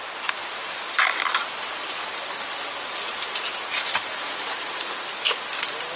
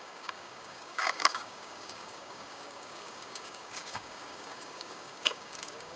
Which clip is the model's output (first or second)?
second